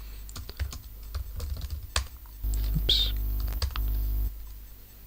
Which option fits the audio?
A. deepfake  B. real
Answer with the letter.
B